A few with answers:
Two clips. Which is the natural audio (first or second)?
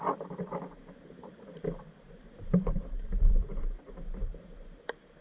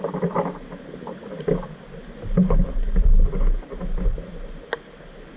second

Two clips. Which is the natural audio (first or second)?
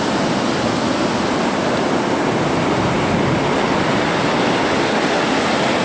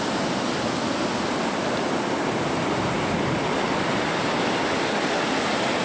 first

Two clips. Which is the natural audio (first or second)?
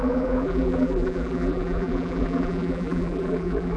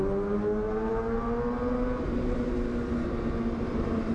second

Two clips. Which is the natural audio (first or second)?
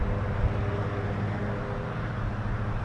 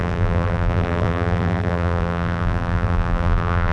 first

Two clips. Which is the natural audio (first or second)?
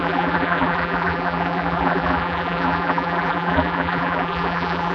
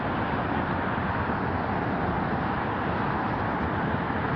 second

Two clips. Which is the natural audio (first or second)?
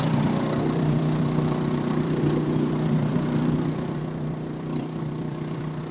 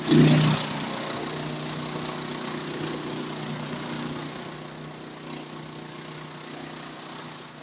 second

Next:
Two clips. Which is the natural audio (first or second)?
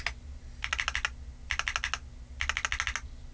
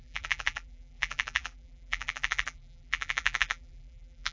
first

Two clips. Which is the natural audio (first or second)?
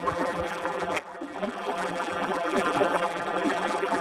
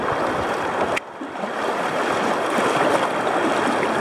second